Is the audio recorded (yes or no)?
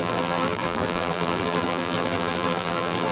no